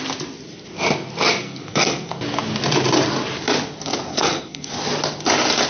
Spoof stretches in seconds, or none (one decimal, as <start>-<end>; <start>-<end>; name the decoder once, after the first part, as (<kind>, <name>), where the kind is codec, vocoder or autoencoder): 1.4-2.1 (codec, SNAC); 4.1-4.7